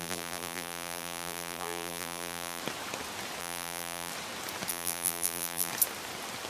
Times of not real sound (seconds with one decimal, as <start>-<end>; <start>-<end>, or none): 0.0-2.6; 3.4-4.1; 4.7-5.7